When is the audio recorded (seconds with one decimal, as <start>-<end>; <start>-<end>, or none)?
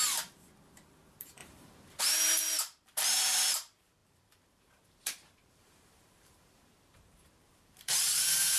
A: none